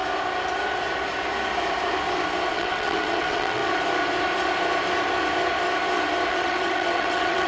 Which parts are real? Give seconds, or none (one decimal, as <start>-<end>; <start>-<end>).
0.0-2.5; 3.6-6.3